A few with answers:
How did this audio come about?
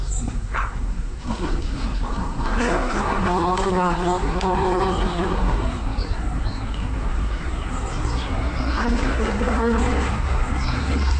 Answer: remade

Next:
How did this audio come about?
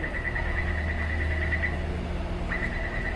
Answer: recorded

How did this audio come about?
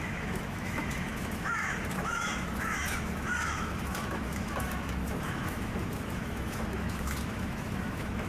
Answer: remade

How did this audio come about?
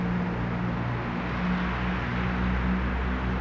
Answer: recorded